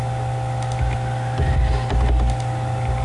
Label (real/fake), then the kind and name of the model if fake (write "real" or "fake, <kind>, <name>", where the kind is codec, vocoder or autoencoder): real